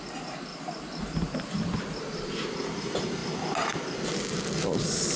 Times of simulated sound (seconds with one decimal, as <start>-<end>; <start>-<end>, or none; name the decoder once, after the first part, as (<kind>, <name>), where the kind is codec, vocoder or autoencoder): none